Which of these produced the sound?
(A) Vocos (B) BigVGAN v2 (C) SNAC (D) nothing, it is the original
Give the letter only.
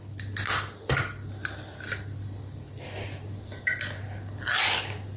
D